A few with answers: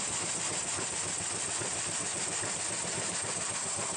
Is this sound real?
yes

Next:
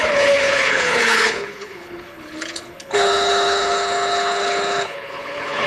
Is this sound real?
no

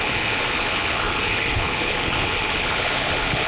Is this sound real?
no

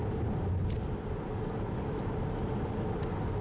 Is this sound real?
yes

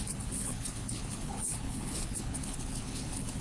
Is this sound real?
no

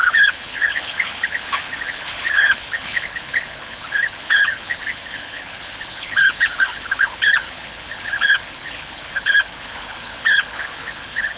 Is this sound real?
no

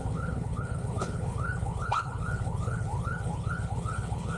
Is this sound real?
no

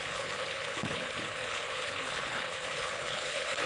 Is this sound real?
no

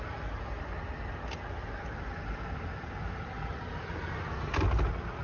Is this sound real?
yes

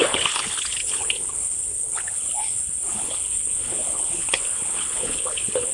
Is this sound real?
no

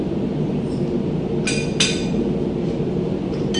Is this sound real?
yes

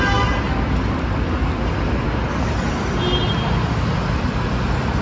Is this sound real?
yes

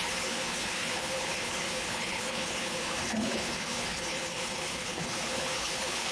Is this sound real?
no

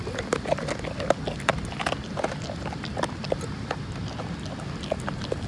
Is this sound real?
yes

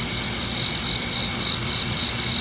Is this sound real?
yes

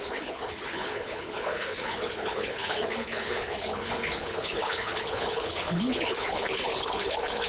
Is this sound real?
no